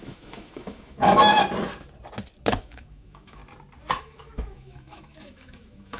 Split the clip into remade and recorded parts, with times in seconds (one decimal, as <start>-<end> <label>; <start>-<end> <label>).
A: 0.0-1.4 remade; 1.4-2.6 recorded; 2.6-3.4 remade; 3.4-4.0 recorded; 4.0-6.0 remade

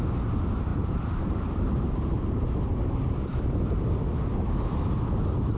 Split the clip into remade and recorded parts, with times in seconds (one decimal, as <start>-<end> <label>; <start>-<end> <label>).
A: 0.0-0.7 recorded; 0.7-4.1 remade; 4.1-5.6 recorded

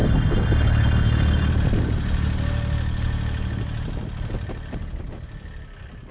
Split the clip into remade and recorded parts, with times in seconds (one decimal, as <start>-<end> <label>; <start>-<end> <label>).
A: 0.0-1.5 remade; 1.5-6.1 recorded

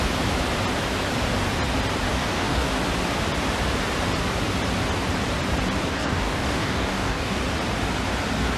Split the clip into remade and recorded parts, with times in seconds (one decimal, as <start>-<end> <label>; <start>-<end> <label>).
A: 0.0-2.1 recorded; 2.1-2.7 remade; 2.7-5.9 recorded; 5.9-7.4 remade; 7.4-8.6 recorded

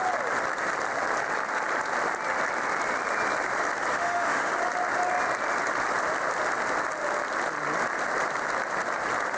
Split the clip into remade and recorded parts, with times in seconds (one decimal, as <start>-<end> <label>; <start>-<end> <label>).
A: 0.0-3.9 recorded; 3.9-4.5 remade; 4.5-9.4 recorded